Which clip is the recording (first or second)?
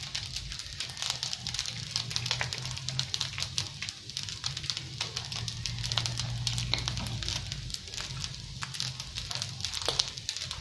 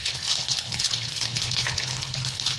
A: first